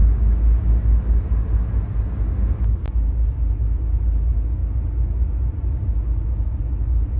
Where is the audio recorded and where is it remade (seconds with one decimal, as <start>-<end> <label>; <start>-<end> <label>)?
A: 0.0-0.8 remade; 0.8-7.2 recorded